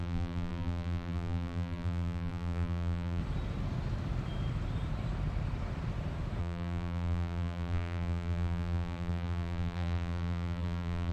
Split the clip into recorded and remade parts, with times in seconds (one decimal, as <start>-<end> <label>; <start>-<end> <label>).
0.0-3.2 remade; 3.2-6.4 recorded; 6.4-11.1 remade